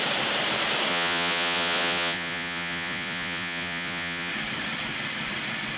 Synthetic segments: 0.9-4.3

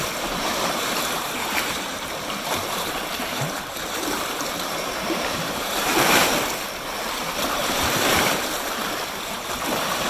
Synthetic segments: 0.0-6.2; 7.3-10.1

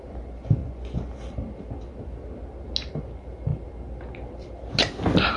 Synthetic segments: 0.6-1.1

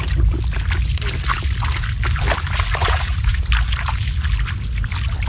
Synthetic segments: 2.8-3.4

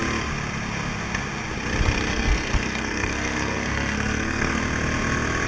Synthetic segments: 2.1-4.6